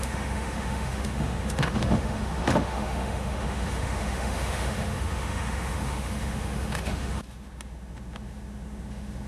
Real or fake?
fake